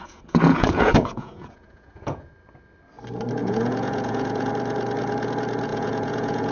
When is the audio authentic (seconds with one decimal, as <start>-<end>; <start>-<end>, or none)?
2.3-3.4; 4.5-5.7